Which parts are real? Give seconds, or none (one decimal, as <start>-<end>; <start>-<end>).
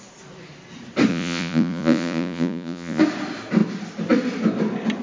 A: 0.0-1.1; 3.0-5.0